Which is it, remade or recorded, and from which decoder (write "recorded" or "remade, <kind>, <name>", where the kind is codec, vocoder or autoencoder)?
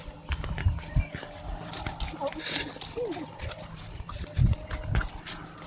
recorded